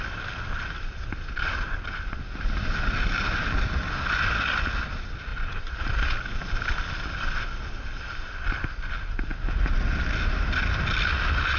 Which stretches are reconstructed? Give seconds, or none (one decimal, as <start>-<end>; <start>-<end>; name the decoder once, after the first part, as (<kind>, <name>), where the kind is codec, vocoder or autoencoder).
none